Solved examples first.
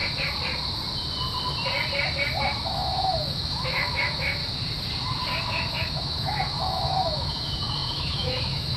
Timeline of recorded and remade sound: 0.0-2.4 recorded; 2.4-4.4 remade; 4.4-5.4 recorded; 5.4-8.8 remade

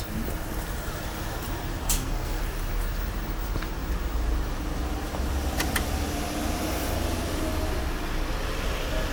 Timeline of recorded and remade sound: 0.0-1.8 recorded; 1.8-2.4 remade; 2.4-9.1 recorded

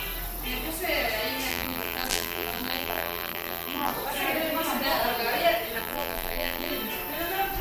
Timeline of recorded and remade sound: 0.0-1.5 recorded; 1.5-3.9 remade; 3.9-5.8 recorded; 5.8-6.7 remade; 6.7-7.6 recorded

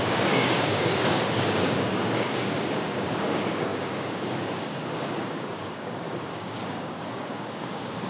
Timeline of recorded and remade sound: 0.0-8.1 remade

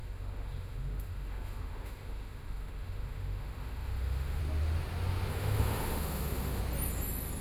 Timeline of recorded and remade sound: 0.0-4.4 remade; 4.4-5.3 recorded; 5.3-6.6 remade; 6.6-7.4 recorded

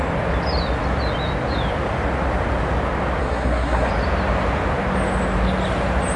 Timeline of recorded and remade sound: 0.0-3.2 recorded; 3.2-3.9 remade; 3.9-6.2 recorded

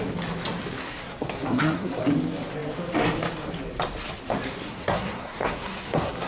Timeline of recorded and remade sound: 0.0-0.8 recorded; 0.8-2.0 remade; 2.0-4.6 recorded; 4.6-6.3 remade